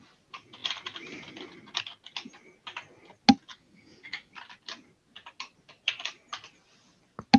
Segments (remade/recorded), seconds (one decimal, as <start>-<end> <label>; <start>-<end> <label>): 0.0-3.5 recorded; 3.5-4.3 remade; 4.3-7.4 recorded